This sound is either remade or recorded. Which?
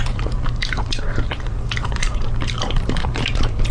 remade